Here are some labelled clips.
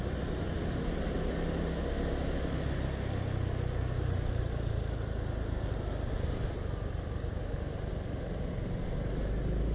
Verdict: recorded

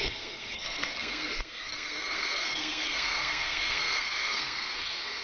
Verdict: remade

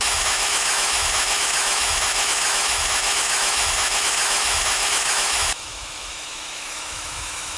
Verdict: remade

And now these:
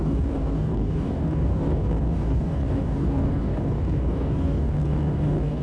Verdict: remade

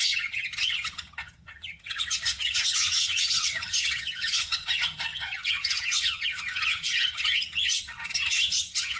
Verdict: remade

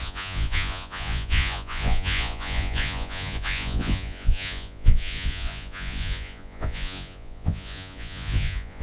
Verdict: remade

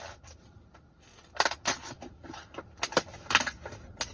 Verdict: recorded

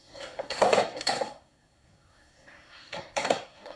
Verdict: remade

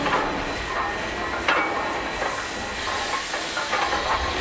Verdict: recorded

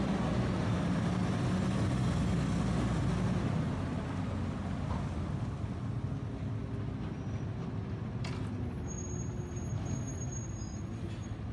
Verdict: recorded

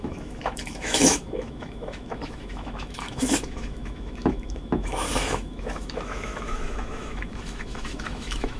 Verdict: remade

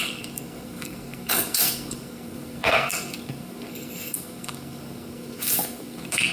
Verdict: remade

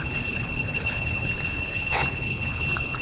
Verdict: remade